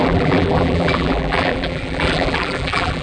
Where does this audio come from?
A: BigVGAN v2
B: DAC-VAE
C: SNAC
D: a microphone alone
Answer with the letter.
A